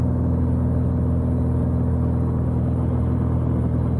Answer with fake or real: real